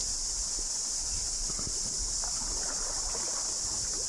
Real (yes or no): yes